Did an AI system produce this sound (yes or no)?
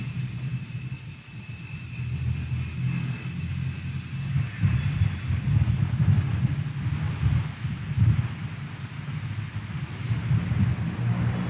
no